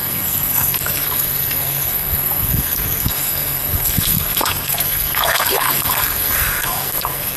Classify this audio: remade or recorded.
remade